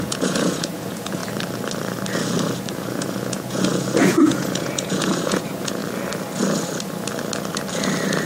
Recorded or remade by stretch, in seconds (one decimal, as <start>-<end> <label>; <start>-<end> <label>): 0.0-1.2 remade; 1.2-2.7 recorded; 2.7-5.8 remade; 5.8-8.3 recorded